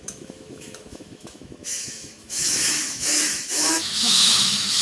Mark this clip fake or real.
fake